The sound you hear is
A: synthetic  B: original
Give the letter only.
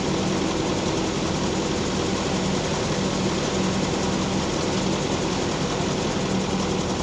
B